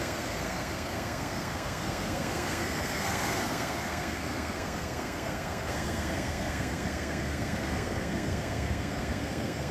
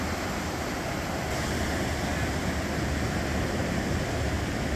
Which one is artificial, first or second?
first